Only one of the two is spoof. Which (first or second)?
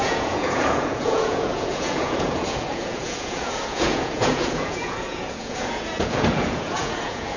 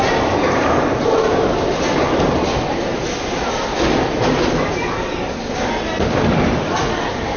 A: first